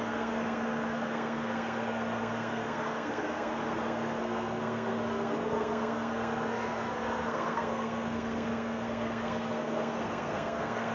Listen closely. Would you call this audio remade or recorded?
remade